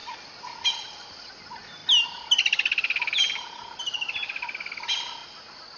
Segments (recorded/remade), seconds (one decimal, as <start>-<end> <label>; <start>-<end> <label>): 0.0-5.8 recorded